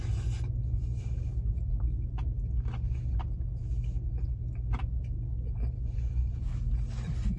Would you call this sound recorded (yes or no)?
yes